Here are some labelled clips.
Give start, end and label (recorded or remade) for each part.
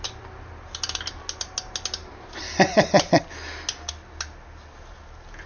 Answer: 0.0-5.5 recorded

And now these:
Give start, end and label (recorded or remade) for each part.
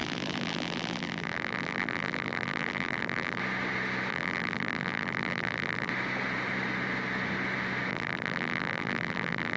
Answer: 0.0-3.4 remade; 3.4-4.1 recorded; 4.1-5.9 remade; 5.9-7.9 recorded; 7.9-9.6 remade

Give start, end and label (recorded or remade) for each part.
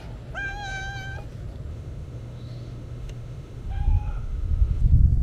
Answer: 0.0-1.7 recorded; 1.7-4.8 remade; 4.8-5.2 recorded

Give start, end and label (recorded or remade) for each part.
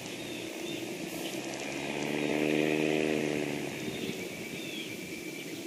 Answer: 0.0-5.7 recorded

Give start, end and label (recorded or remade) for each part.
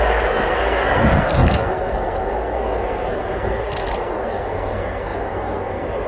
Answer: 0.0-6.1 remade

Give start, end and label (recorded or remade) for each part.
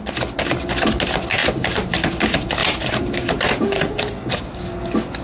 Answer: 0.0-1.4 recorded; 1.4-2.0 remade; 2.0-2.6 recorded; 2.6-3.8 remade; 3.8-5.2 recorded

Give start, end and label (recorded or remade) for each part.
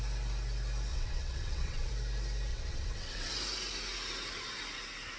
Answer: 0.0-0.9 recorded; 0.9-1.9 remade; 1.9-2.5 recorded; 2.5-3.3 remade; 3.3-5.2 recorded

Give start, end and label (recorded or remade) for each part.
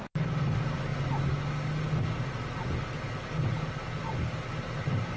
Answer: 0.0-5.2 recorded